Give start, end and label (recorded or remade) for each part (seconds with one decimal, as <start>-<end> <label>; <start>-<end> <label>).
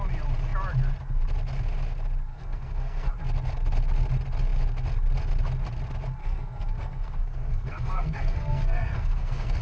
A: 0.0-2.3 recorded; 2.3-3.1 remade; 3.1-6.2 recorded; 6.2-9.6 remade